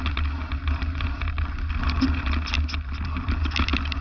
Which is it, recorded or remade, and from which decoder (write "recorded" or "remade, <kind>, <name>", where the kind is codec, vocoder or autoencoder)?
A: recorded